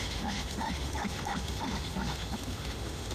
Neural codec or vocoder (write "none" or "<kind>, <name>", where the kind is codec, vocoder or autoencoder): autoencoder, DAC-VAE